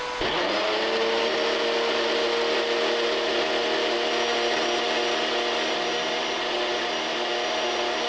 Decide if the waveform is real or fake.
real